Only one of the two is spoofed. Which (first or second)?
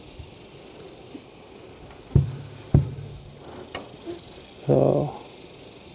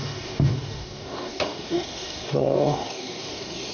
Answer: second